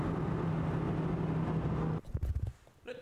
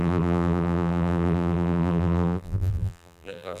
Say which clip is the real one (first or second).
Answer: first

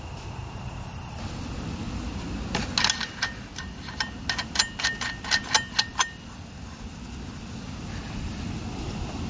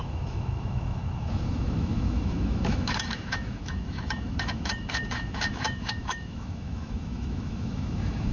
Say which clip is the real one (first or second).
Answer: first